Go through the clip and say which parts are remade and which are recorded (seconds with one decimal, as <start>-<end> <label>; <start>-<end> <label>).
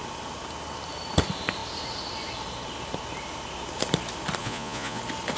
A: 0.0-4.4 recorded; 4.4-5.0 remade; 5.0-5.4 recorded